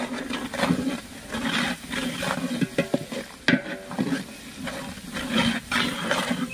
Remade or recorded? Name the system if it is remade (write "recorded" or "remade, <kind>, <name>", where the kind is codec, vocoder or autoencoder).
recorded